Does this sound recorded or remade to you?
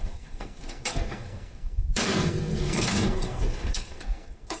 remade